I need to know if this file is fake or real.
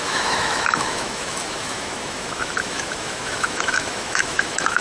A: fake